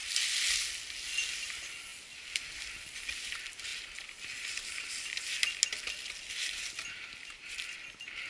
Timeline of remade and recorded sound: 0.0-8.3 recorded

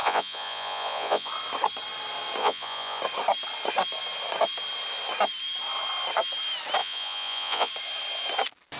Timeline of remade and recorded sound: 0.0-1.3 remade; 1.3-2.4 recorded; 2.4-3.0 remade; 3.0-6.8 recorded; 6.8-7.7 remade; 7.7-8.8 recorded

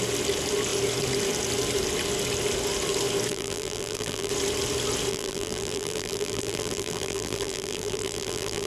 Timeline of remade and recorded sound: 0.0-3.3 recorded; 3.3-4.3 remade; 4.3-5.1 recorded; 5.1-8.7 remade

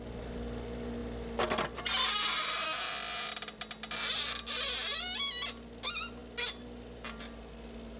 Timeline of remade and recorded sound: 0.0-8.0 recorded

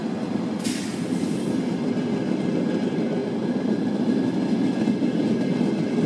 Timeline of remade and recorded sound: 0.0-6.1 recorded